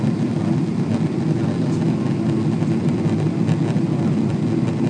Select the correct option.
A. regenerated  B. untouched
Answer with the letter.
B